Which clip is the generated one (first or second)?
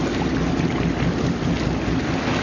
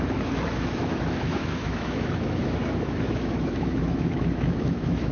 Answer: second